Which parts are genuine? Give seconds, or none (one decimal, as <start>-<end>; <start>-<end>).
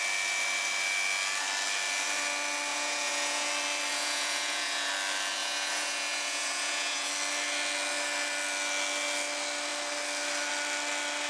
0.0-2.7; 3.5-3.9; 4.9-5.4; 7.1-11.3